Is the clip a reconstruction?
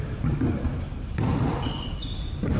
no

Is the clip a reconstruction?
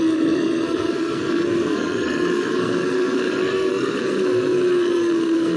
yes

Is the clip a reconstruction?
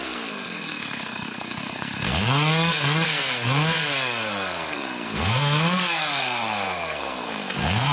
yes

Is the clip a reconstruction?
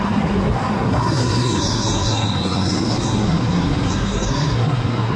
yes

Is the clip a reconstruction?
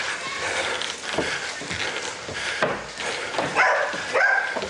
no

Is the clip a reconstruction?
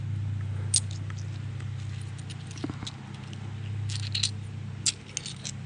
no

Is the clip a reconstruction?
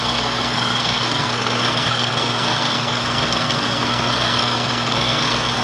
yes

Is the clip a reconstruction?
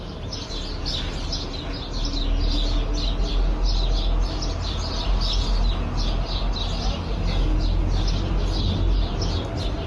no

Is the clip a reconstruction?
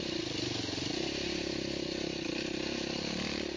no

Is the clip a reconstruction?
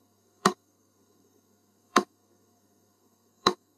yes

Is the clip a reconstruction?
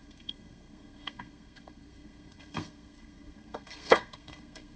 yes